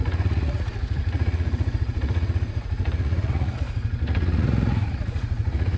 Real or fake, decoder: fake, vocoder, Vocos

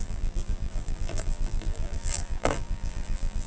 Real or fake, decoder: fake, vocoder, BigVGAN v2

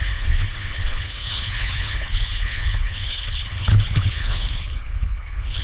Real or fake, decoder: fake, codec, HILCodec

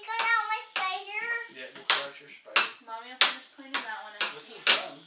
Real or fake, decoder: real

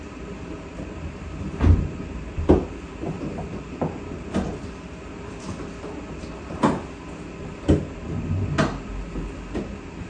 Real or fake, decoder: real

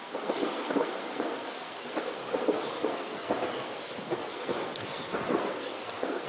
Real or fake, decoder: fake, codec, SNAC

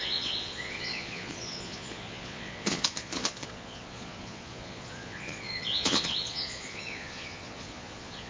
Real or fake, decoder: fake, vocoder, Vocos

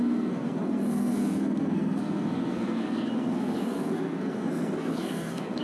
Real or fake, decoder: fake, codec, SNAC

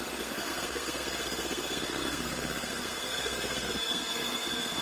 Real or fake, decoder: fake, codec, SNAC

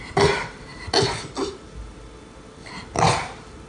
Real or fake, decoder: real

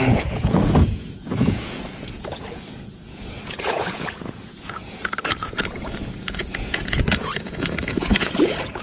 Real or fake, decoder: fake, vocoder, Vocos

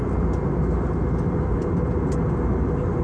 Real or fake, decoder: real